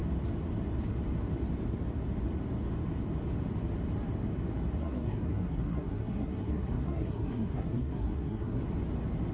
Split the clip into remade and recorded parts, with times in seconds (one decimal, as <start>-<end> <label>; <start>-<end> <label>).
0.0-4.8 recorded; 4.8-8.6 remade; 8.6-9.3 recorded